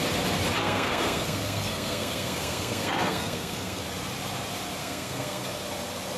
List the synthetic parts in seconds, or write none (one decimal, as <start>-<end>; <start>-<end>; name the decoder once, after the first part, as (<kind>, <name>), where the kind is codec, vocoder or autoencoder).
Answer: 0.6-3.8 (codec, SNAC); 4.8-5.6